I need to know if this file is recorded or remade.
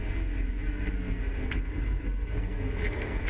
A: remade